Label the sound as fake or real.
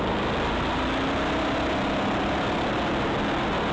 real